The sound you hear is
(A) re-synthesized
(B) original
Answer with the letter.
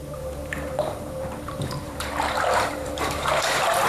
A